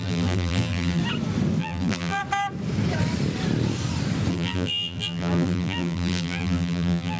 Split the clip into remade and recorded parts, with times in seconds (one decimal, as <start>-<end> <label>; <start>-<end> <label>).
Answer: 0.0-1.0 remade; 1.0-1.6 recorded; 1.6-2.2 remade; 2.2-4.3 recorded; 4.3-7.2 remade